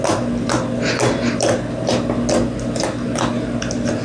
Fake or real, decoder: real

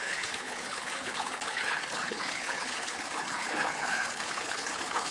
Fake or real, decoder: fake, codec, HILCodec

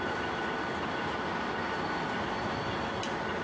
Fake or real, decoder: real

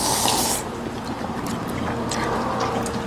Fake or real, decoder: real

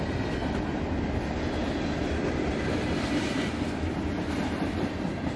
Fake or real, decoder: real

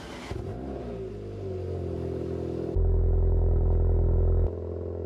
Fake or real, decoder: real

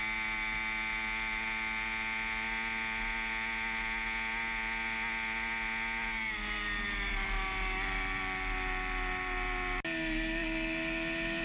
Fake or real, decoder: real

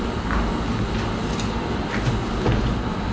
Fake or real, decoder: real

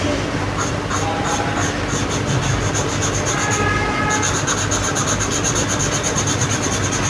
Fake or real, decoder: real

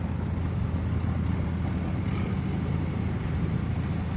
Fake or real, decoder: real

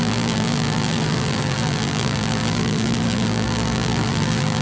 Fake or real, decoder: fake, vocoder, BigVGAN v2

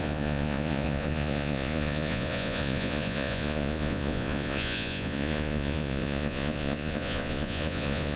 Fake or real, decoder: fake, vocoder, Vocos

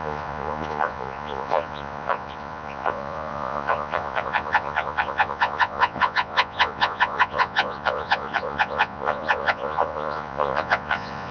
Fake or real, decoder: fake, vocoder, Vocos